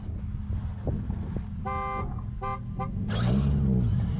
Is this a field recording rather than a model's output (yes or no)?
yes